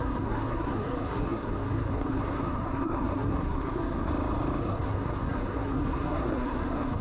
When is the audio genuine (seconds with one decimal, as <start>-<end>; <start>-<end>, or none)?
4.1-4.6